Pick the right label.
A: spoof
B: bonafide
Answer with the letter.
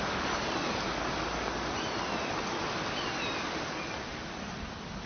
B